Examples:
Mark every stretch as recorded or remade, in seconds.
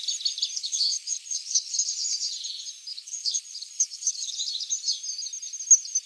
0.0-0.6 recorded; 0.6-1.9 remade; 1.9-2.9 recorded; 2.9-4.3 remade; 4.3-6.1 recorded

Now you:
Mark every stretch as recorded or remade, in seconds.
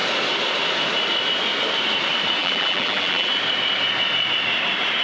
0.0-2.4 recorded; 2.4-3.3 remade; 3.3-5.0 recorded